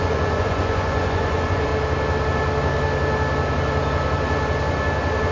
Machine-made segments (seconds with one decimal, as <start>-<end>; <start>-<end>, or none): 0.0-1.7

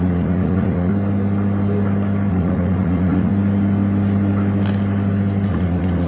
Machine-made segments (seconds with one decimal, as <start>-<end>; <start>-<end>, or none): 0.0-0.9; 2.3-3.3; 5.5-6.1

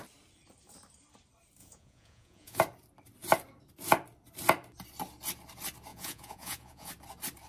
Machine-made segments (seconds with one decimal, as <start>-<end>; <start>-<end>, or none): 1.6-2.6; 5.9-6.9

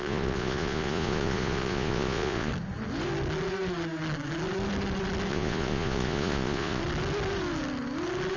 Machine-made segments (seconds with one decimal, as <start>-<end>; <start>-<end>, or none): 0.0-2.5; 5.3-6.8

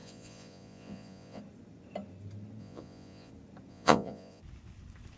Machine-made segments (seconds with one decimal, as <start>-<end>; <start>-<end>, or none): 0.0-1.4; 2.6-3.3; 3.7-4.4

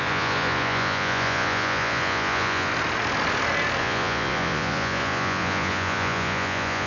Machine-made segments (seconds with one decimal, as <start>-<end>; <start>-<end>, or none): 0.0-2.7; 3.8-6.9